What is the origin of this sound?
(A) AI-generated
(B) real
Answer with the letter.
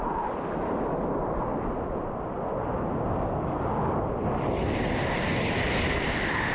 B